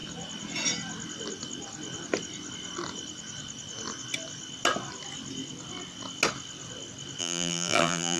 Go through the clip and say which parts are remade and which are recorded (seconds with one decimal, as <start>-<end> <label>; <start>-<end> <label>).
0.0-7.2 recorded; 7.2-8.2 remade